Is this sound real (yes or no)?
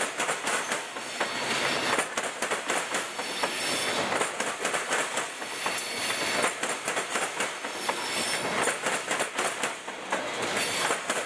yes